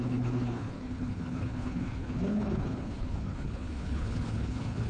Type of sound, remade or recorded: remade